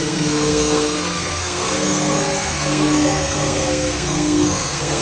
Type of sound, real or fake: fake